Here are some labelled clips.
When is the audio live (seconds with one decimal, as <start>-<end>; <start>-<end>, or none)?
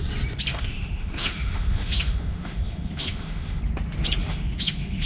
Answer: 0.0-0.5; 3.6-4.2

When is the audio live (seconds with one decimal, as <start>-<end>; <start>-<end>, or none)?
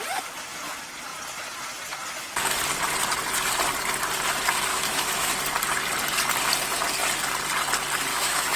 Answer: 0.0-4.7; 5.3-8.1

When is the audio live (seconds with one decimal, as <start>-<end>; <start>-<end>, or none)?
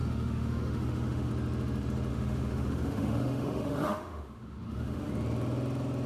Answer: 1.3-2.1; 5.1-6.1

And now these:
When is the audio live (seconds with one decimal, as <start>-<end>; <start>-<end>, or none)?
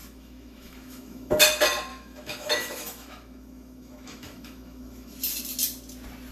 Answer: 1.3-1.9; 5.2-6.3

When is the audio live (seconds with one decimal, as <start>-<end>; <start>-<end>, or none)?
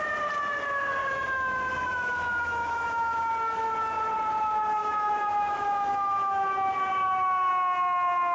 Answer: 0.0-1.0; 3.3-4.8; 7.5-8.3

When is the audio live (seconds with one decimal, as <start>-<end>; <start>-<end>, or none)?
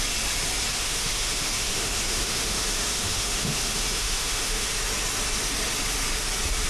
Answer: 0.0-0.7; 4.7-6.7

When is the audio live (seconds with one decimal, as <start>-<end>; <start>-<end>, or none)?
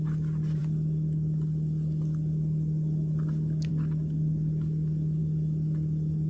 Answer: 0.0-6.3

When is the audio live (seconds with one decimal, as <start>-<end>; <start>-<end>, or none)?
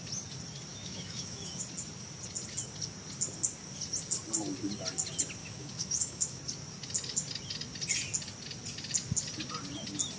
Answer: 0.0-0.7; 1.6-5.4; 6.4-10.2